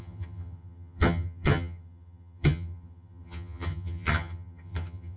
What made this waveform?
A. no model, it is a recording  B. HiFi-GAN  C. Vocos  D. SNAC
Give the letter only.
B